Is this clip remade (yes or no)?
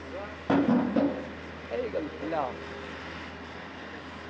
no